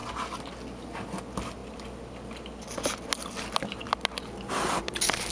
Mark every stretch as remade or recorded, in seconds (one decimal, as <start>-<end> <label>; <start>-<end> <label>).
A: 0.0-5.3 recorded

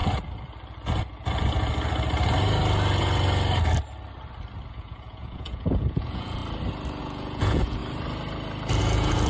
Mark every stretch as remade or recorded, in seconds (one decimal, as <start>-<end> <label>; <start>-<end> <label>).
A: 0.0-4.7 recorded; 4.7-6.4 remade; 6.4-7.0 recorded; 7.0-7.8 remade; 7.8-8.8 recorded; 8.8-9.3 remade